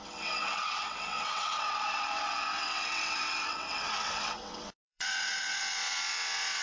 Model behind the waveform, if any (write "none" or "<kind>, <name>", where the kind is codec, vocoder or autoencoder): vocoder, WaveNeXt